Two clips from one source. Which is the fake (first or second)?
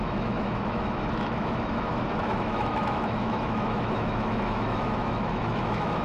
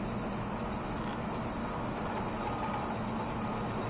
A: first